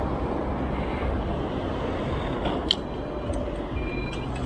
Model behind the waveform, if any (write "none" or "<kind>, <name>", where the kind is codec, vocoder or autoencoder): none